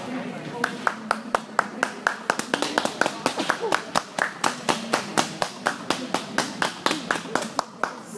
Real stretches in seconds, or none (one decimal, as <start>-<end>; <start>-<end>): 0.0-8.2